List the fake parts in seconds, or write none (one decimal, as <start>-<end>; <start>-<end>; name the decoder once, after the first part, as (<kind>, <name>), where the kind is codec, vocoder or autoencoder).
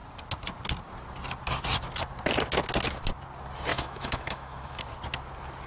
3.7-4.8 (autoencoder, DAC-VAE)